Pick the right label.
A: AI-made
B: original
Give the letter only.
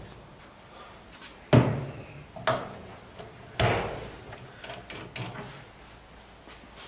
B